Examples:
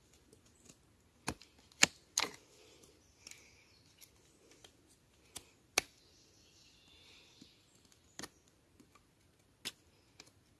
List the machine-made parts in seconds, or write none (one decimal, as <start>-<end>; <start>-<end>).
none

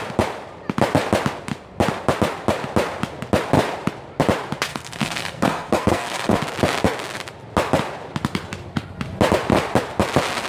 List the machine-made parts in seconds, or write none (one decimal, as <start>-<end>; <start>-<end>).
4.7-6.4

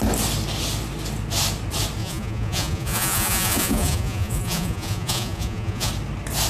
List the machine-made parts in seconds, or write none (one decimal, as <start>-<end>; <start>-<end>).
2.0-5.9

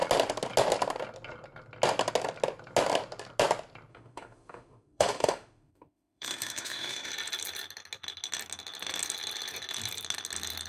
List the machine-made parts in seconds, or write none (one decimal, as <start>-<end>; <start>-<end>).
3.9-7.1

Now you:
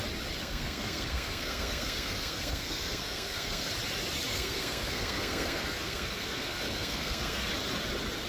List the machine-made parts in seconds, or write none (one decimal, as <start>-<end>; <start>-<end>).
0.4-3.7; 4.3-7.5

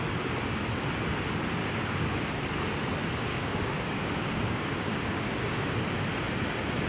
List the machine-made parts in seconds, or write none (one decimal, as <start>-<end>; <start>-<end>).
1.6-2.2; 3.3-5.7